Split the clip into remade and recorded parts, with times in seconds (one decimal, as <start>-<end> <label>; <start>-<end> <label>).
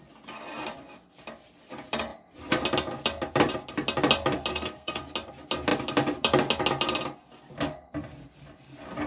0.0-4.5 recorded; 4.5-5.0 remade; 5.0-9.1 recorded